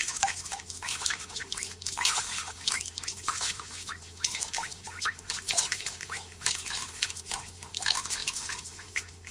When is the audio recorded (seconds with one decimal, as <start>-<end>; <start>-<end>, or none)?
none